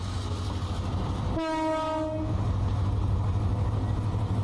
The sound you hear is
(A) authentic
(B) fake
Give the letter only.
A